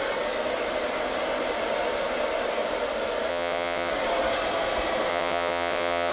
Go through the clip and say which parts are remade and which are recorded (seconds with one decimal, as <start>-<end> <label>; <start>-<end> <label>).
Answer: 0.0-3.3 recorded; 3.3-3.9 remade; 3.9-5.1 recorded; 5.1-6.1 remade